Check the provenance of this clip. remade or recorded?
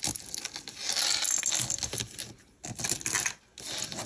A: recorded